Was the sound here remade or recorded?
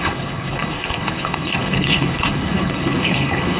remade